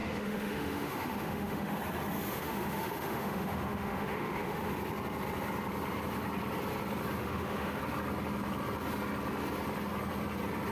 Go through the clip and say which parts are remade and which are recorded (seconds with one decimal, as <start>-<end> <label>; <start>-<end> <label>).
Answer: 0.0-1.8 remade; 1.8-2.3 recorded; 2.3-4.7 remade; 4.7-7.2 recorded; 7.2-7.8 remade; 7.8-10.7 recorded